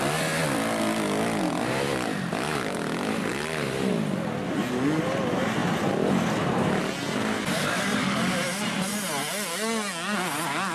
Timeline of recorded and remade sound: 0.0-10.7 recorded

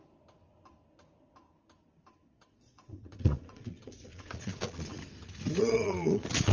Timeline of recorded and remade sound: 0.0-2.2 recorded; 2.2-5.0 remade; 5.0-5.6 recorded; 5.6-6.5 remade